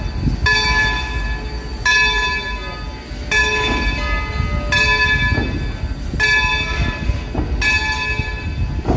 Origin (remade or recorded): recorded